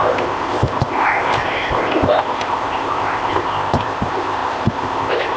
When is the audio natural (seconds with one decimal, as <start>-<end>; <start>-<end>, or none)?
none